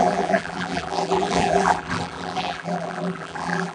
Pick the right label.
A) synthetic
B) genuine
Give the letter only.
A